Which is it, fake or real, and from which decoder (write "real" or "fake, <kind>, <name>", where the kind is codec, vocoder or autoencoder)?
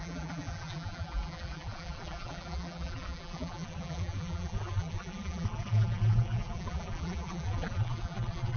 fake, vocoder, BigVGAN v2